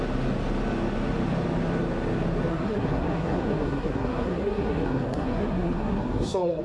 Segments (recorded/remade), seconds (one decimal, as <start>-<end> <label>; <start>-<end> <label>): 0.0-2.5 recorded; 2.5-6.6 remade